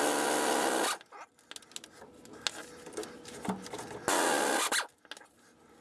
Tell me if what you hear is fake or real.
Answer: real